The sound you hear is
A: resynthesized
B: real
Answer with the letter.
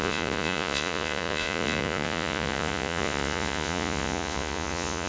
A